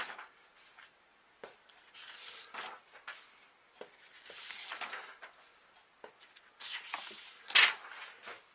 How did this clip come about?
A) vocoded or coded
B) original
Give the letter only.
B